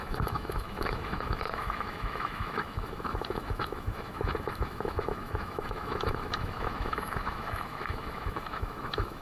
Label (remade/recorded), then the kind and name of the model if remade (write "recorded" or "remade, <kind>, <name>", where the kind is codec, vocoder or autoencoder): remade, autoencoder, DAC-VAE